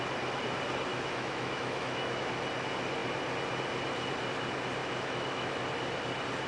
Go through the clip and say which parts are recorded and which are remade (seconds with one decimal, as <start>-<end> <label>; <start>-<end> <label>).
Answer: 0.0-0.9 recorded; 0.9-2.3 remade; 2.3-4.8 recorded; 4.8-5.6 remade; 5.6-6.5 recorded